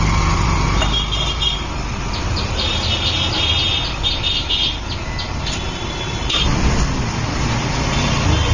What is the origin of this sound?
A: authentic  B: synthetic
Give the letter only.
A